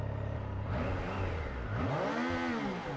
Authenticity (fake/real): real